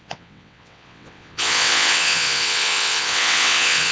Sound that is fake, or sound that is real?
fake